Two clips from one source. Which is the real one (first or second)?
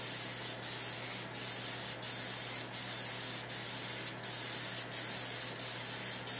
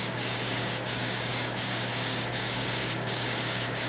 first